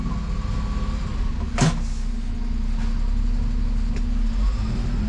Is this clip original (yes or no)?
yes